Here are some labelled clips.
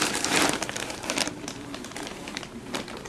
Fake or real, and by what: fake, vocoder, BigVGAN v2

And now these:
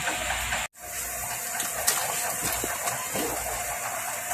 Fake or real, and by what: real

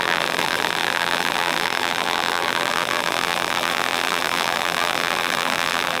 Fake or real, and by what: fake, vocoder, BigVGAN v2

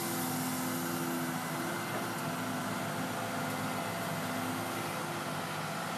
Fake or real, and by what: real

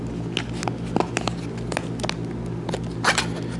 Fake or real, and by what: real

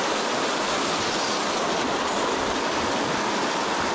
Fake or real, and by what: real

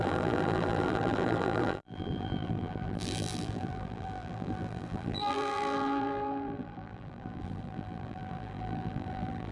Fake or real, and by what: fake, vocoder, BigVGAN v2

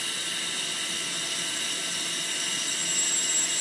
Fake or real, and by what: real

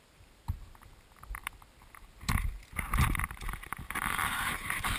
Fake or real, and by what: fake, vocoder, BigVGAN v2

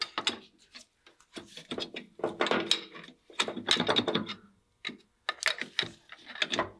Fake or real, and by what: real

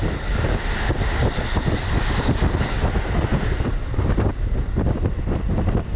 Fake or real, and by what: real